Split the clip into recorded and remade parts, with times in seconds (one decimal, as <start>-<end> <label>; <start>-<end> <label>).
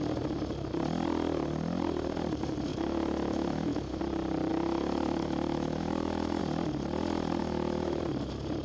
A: 0.0-2.7 recorded; 2.7-4.0 remade; 4.0-4.5 recorded; 4.5-6.4 remade; 6.4-7.4 recorded; 7.4-8.0 remade; 8.0-8.6 recorded